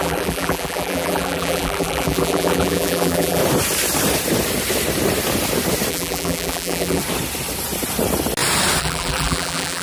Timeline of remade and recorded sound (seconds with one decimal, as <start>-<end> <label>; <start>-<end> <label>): 0.0-3.4 remade; 3.4-5.9 recorded; 5.9-7.0 remade; 7.0-8.8 recorded; 8.8-9.8 remade